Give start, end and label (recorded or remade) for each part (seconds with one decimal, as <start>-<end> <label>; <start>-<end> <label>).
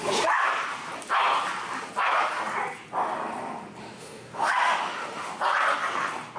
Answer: 0.0-3.8 recorded; 3.8-5.3 remade; 5.3-6.4 recorded